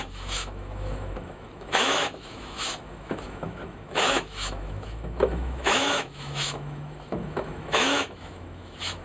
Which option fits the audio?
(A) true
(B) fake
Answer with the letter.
B